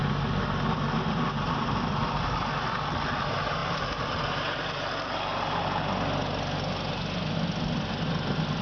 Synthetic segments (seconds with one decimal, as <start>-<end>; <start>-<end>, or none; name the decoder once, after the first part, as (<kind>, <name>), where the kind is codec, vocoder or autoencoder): none